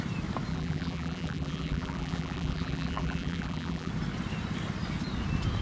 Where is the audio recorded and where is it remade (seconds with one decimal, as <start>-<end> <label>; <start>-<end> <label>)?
0.0-0.5 recorded; 0.5-3.9 remade; 3.9-5.6 recorded